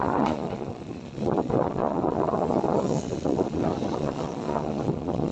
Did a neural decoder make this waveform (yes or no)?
yes